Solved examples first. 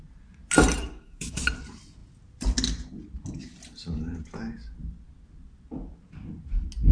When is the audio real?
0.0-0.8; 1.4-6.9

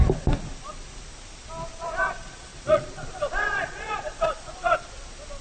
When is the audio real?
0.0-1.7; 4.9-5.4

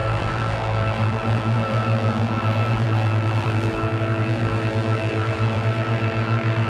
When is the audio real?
none

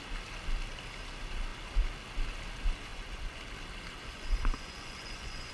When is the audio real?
0.0-2.9; 3.4-4.0